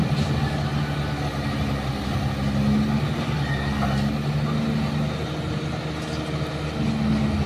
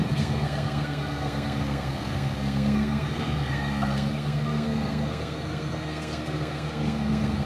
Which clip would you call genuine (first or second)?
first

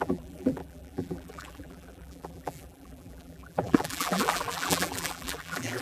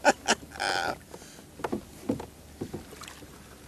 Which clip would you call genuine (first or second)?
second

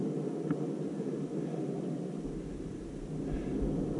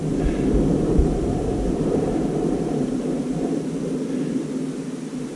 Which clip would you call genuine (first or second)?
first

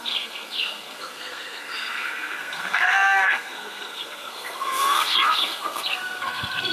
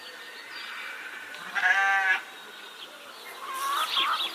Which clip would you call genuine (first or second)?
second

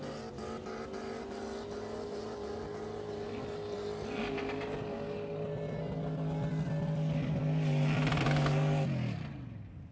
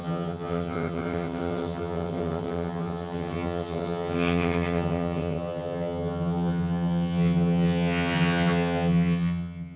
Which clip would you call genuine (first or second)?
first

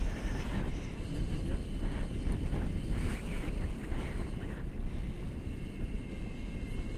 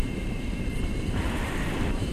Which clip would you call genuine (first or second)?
first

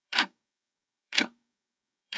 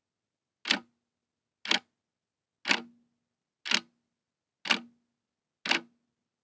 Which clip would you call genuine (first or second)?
second